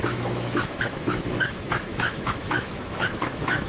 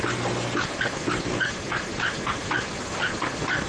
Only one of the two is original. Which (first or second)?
second